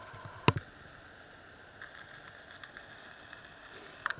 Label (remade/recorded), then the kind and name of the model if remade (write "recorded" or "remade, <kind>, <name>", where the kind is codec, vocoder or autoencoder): recorded